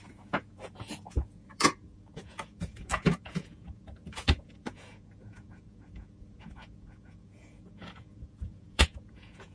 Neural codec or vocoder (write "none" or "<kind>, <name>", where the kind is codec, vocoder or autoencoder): vocoder, Vocos